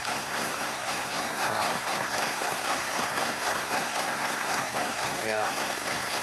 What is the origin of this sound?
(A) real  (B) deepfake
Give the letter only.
B